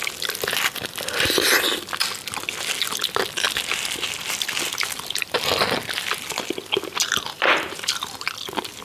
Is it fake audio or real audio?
real